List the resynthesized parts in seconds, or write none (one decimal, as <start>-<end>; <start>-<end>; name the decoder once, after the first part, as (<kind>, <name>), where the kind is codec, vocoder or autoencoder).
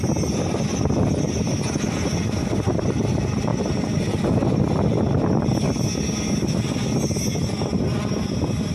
none